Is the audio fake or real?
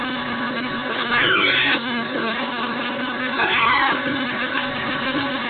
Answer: fake